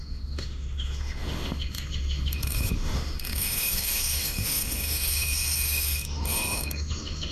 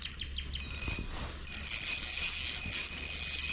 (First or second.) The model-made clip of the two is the first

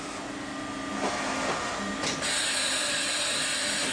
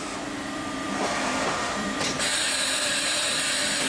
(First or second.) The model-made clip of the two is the second